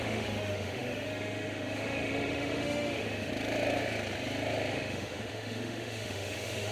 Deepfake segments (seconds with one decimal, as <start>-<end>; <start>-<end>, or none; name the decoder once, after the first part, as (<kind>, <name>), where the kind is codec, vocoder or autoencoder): 0.0-3.3 (autoencoder, DAC-VAE); 4.7-6.7